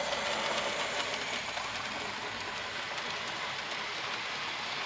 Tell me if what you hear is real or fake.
real